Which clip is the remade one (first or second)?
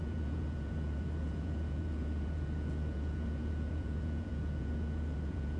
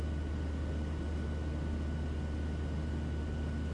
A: first